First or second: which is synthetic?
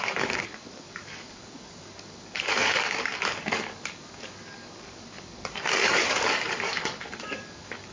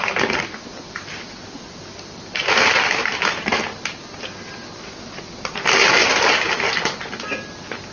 first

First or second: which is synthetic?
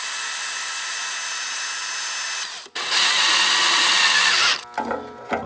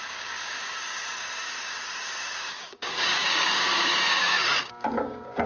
second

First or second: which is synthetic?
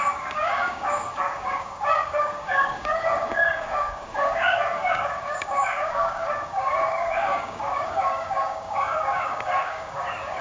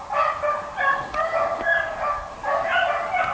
first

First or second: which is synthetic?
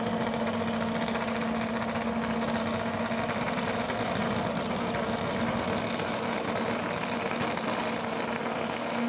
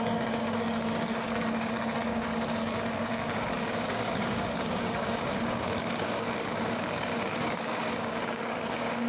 second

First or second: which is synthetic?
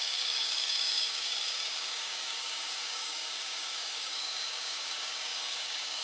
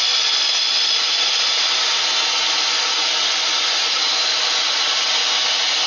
first